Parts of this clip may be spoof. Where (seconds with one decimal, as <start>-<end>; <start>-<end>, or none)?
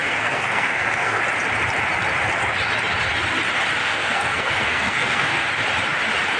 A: 0.0-1.2; 3.8-5.5